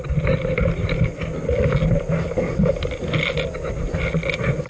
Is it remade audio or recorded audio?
recorded